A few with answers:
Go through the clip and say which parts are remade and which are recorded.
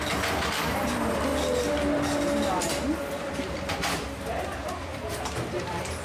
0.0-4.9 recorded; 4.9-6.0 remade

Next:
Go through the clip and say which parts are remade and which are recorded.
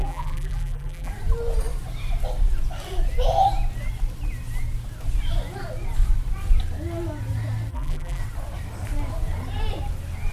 0.0-1.1 remade; 1.1-7.7 recorded; 7.7-8.2 remade; 8.2-10.3 recorded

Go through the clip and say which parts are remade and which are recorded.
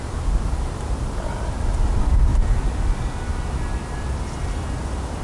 0.0-2.3 recorded; 2.3-3.5 remade; 3.5-5.2 recorded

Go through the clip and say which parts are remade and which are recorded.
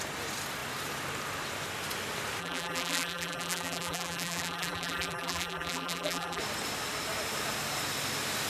0.0-2.4 recorded; 2.4-6.4 remade; 6.4-8.5 recorded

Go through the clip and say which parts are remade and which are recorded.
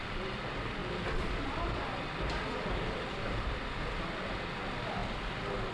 0.0-0.8 recorded; 0.8-4.2 remade; 4.2-5.7 recorded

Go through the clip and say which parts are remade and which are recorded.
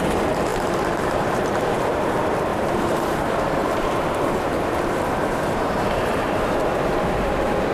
0.0-0.5 recorded; 0.5-2.1 remade; 2.1-2.5 recorded; 2.5-3.0 remade; 3.0-3.6 recorded; 3.6-4.6 remade; 4.6-5.2 recorded; 5.2-7.7 remade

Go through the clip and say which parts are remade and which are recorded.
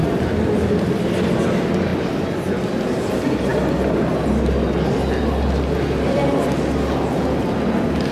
0.0-0.5 remade; 0.5-1.9 recorded; 1.9-3.1 remade; 3.1-8.1 recorded